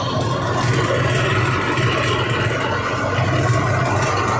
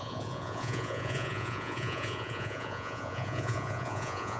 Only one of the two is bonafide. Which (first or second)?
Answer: first